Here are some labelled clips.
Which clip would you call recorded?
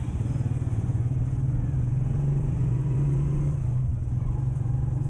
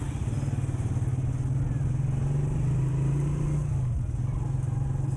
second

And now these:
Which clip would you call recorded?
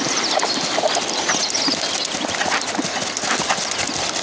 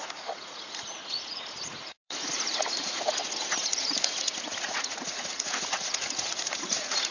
first